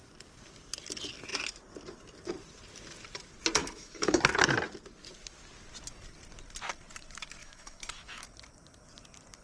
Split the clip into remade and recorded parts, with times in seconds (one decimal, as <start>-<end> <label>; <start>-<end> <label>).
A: 0.0-3.6 recorded; 3.6-4.2 remade; 4.2-7.4 recorded; 7.4-8.2 remade; 8.2-9.4 recorded